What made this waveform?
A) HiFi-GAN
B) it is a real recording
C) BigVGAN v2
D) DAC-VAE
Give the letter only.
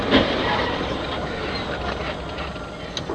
B